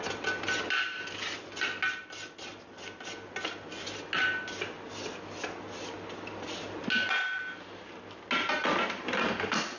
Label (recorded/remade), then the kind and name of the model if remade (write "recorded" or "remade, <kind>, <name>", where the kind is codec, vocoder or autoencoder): recorded